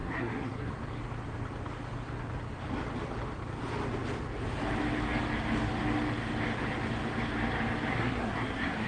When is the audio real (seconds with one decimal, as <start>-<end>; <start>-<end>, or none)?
0.7-7.9